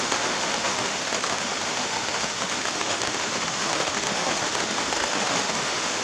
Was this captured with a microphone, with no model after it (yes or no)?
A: no